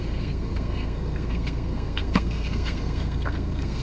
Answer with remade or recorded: remade